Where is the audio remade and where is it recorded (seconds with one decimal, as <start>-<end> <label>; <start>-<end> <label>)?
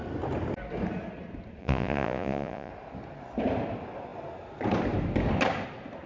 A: 0.0-1.6 recorded; 1.6-2.7 remade; 2.7-6.1 recorded